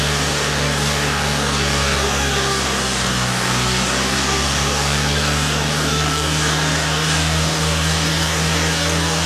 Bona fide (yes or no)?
no